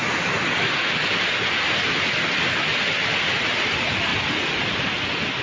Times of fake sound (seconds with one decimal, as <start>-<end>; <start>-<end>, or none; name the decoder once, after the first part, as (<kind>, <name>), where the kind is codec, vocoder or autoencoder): none